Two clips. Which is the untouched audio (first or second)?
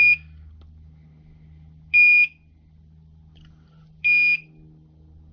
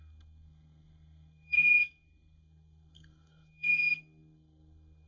first